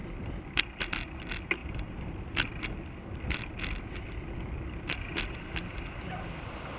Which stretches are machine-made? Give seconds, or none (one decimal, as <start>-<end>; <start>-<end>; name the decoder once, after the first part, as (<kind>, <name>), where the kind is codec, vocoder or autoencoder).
0.0-0.6 (vocoder, BigVGAN v2); 1.6-5.7